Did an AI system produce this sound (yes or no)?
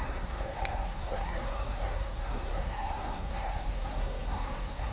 yes